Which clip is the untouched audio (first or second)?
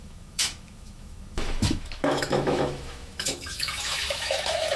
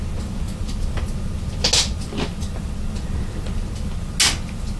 second